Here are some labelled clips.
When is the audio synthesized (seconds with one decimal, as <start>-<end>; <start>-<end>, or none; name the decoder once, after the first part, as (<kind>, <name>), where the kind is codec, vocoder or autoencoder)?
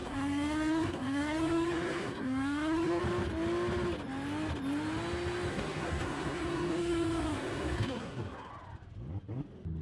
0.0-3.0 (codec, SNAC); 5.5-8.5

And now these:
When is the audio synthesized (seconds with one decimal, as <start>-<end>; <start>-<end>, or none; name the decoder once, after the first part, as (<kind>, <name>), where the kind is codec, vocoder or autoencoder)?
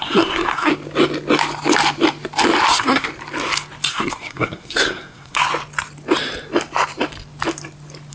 0.0-0.7 (codec, SNAC); 2.7-3.1; 3.9-5.4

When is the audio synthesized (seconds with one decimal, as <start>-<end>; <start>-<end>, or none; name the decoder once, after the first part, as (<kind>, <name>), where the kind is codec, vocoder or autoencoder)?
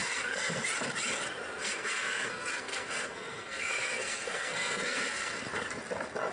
0.0-0.6 (codec, SNAC); 1.6-5.4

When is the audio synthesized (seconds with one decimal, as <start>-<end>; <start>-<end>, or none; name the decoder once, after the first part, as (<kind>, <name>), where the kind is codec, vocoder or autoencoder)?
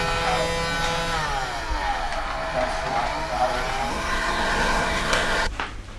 3.9-5.5 (codec, SNAC)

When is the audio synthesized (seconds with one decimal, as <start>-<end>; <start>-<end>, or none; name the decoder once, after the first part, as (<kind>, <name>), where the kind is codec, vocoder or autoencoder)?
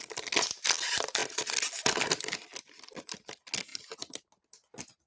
none